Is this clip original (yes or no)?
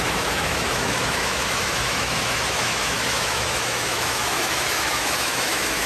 no